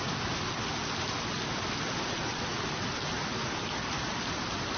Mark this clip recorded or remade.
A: recorded